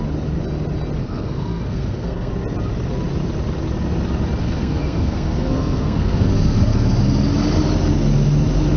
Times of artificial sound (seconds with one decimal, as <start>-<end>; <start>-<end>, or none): 1.0-2.3; 4.4-7.0